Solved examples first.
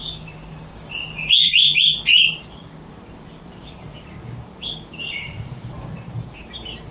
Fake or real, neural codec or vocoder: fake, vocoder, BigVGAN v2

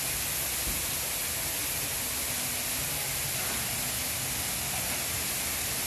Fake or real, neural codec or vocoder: real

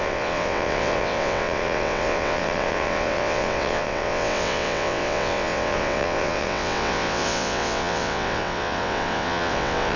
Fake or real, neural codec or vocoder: fake, vocoder, WaveNeXt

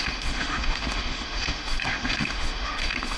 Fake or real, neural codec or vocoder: fake, autoencoder, DAC-VAE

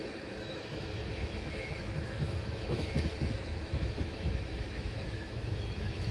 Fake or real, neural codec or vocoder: fake, autoencoder, DAC-VAE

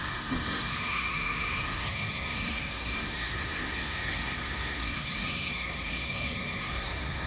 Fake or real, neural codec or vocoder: fake, codec, SNAC